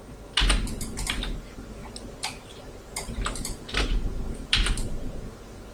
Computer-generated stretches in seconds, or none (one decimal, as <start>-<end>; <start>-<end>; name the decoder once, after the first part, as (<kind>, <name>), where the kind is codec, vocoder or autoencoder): 1.8-5.2 (vocoder, BigVGAN v2)